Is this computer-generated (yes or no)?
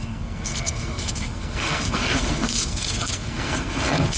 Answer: yes